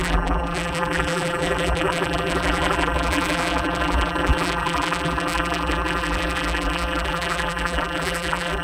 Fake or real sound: fake